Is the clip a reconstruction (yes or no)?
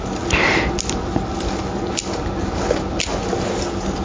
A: no